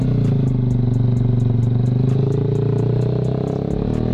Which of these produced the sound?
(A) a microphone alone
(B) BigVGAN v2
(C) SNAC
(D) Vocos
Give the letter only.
A